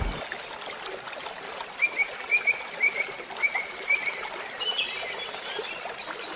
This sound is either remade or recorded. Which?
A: recorded